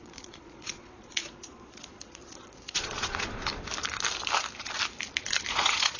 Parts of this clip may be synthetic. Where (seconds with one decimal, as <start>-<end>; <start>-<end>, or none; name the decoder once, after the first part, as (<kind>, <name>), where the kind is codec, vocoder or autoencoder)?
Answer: 0.0-3.5 (vocoder, Vocos); 5.5-6.0